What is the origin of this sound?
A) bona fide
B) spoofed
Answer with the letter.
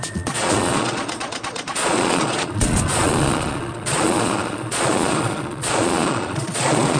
B